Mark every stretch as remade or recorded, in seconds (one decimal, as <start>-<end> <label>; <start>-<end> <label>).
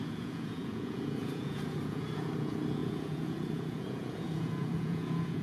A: 0.0-5.4 remade